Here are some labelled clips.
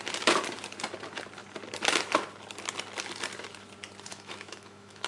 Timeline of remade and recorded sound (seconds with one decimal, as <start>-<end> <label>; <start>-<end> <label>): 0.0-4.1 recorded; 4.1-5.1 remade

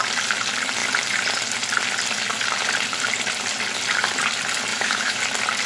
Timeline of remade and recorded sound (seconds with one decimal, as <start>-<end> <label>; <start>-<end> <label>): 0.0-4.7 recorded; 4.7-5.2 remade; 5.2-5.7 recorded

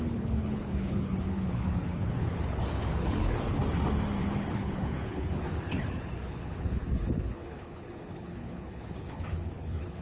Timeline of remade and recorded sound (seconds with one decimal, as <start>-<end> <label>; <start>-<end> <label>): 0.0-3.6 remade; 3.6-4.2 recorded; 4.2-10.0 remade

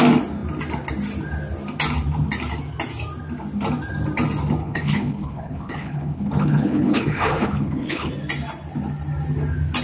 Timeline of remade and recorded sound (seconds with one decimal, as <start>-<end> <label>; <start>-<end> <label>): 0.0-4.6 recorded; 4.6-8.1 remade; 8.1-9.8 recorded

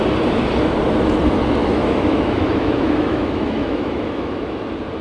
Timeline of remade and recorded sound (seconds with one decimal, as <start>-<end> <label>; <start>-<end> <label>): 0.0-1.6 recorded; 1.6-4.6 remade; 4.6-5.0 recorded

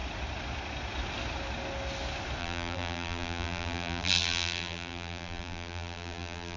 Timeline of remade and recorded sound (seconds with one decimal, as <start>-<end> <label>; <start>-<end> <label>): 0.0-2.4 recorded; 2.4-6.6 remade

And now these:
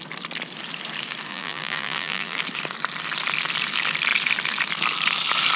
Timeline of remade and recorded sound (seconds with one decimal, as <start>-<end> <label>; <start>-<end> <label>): 0.0-1.3 recorded; 1.3-2.4 remade; 2.4-5.6 recorded